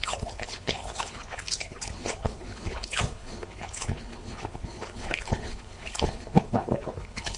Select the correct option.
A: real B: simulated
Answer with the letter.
B